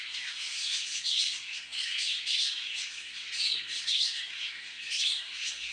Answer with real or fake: fake